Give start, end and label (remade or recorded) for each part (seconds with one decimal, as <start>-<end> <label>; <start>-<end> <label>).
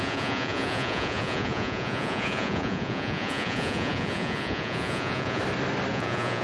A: 0.0-5.4 remade; 5.4-5.9 recorded; 5.9-6.4 remade